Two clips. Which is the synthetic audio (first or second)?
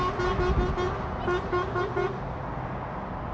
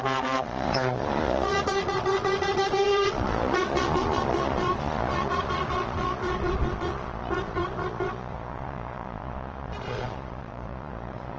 second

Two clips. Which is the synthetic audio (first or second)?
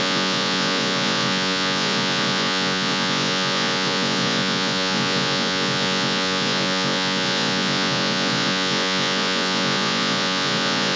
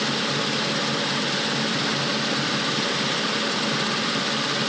first